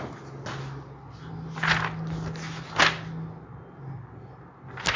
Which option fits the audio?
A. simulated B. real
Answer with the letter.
B